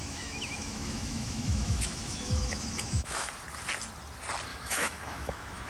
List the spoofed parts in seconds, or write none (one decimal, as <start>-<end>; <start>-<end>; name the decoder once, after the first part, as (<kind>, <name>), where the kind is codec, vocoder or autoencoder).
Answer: 0.0-3.3 (autoencoder, DAC-VAE); 4.5-5.7